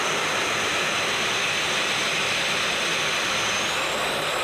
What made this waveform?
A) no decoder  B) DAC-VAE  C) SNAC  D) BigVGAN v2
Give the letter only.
A